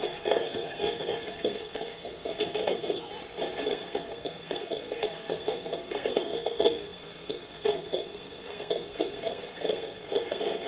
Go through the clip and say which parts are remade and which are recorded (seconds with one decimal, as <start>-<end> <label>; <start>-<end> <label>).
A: 0.0-3.1 remade; 3.1-3.7 recorded; 3.7-10.7 remade